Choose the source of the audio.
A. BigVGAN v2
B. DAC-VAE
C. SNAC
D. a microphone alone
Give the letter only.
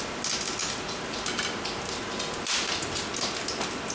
D